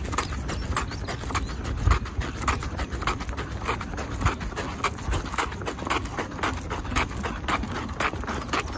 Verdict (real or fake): real